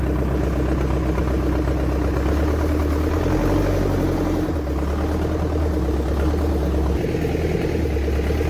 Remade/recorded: recorded